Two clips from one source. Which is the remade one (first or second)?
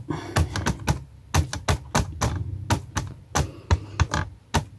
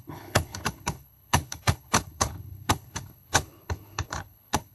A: second